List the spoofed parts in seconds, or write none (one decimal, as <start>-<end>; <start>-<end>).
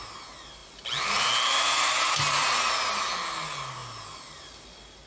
none